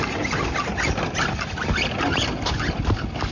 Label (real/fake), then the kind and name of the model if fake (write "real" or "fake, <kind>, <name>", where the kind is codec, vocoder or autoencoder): real